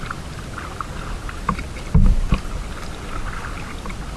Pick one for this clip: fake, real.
real